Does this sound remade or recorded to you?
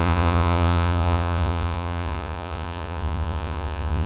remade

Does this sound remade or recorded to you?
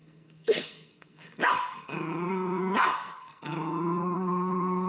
remade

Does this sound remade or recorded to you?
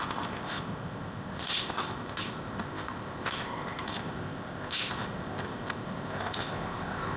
remade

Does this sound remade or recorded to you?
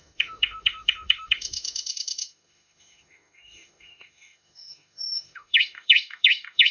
remade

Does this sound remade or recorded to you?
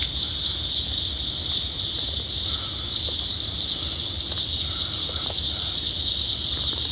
recorded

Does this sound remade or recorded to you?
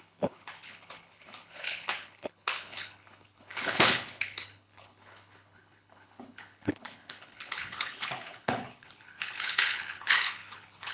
remade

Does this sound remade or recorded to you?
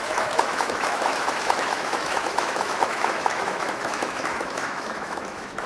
remade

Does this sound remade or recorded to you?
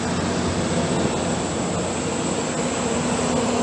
recorded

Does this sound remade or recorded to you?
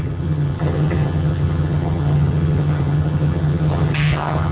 remade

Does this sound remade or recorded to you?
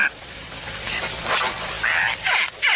remade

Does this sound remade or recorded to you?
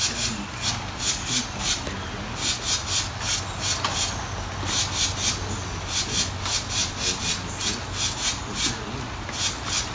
recorded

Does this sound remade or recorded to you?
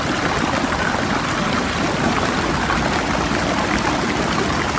recorded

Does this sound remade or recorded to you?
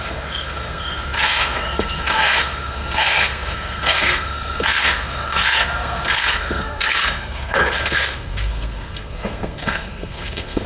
remade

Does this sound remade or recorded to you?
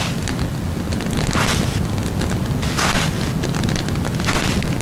recorded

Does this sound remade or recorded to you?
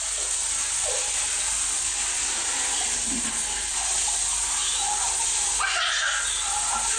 recorded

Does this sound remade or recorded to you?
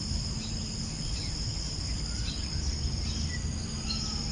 recorded